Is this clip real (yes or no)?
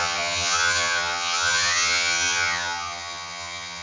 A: no